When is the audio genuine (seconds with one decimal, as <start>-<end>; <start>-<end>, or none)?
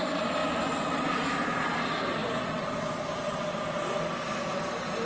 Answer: 0.0-5.0